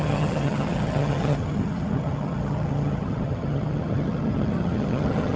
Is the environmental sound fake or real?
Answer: fake